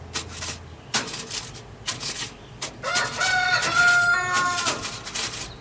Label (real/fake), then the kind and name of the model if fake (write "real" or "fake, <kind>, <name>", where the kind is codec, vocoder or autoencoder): real